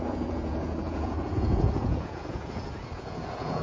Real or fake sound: fake